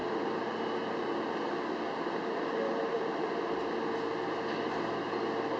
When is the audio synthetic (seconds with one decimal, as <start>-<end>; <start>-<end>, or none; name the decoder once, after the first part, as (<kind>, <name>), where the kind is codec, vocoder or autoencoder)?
0.0-3.4 (vocoder, BigVGAN v2)